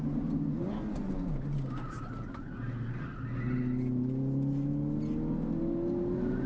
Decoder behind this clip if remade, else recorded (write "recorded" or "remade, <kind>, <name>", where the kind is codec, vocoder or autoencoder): recorded